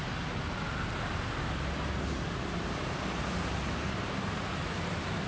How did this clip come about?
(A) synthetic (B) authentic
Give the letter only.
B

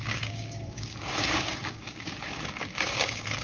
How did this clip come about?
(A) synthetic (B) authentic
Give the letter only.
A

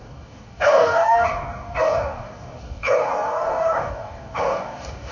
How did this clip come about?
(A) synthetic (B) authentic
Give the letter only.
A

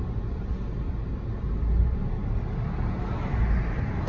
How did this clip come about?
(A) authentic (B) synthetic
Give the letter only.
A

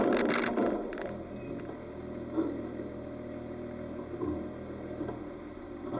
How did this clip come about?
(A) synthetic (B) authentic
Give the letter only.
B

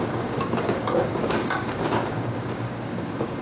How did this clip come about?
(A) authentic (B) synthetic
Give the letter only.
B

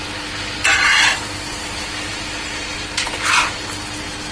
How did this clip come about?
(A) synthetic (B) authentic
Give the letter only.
B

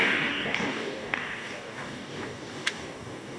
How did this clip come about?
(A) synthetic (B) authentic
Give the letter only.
A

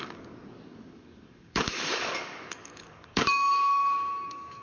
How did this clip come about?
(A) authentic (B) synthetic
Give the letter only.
B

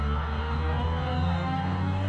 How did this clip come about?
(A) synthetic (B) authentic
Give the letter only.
A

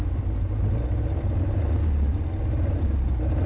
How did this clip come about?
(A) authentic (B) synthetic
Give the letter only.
A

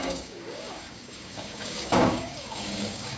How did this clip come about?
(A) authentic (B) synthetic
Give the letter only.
B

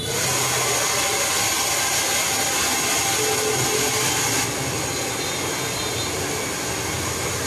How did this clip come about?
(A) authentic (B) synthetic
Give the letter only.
A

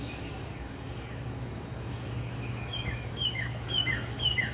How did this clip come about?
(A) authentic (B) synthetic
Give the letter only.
B